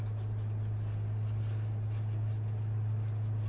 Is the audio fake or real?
real